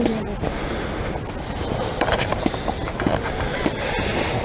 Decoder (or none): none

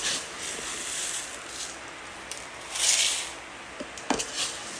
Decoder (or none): none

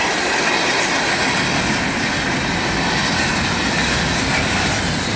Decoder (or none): none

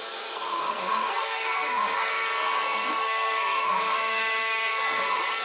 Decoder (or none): codec, SNAC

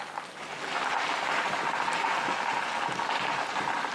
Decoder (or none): none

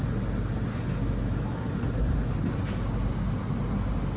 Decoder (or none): none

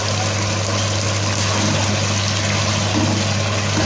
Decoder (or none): none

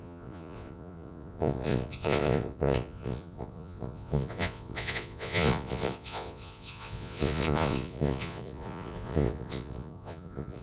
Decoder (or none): vocoder, Vocos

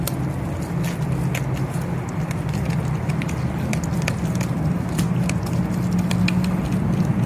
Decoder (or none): none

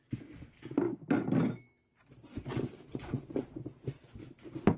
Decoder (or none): none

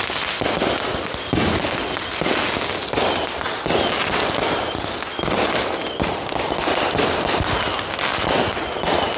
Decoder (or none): none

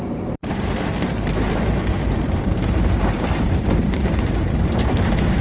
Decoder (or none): vocoder, BigVGAN v2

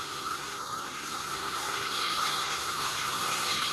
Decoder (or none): codec, SNAC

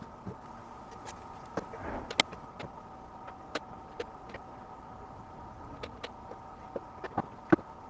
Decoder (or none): none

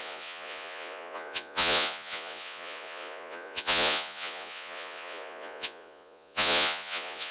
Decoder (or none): vocoder, Vocos